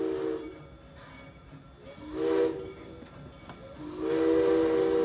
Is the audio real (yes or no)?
yes